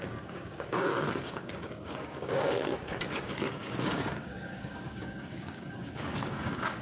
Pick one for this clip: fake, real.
fake